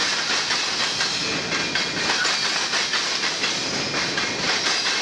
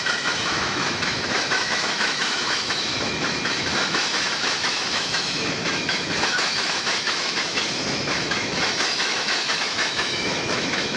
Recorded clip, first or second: first